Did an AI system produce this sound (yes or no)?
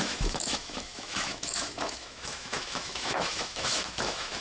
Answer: yes